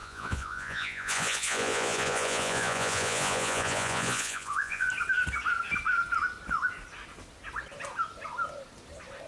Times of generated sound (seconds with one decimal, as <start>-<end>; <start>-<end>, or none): 0.0-4.9